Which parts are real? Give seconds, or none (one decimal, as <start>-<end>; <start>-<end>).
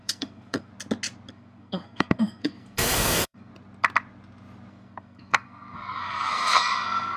0.7-1.3; 3.5-4.7